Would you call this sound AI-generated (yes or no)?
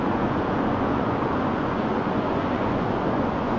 yes